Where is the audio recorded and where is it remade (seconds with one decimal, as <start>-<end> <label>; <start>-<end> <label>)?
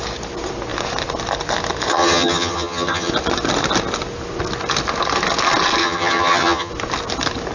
0.0-1.9 recorded; 1.9-3.1 remade; 3.1-5.8 recorded; 5.8-6.7 remade; 6.7-7.5 recorded